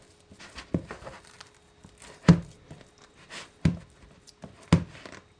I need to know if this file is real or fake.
real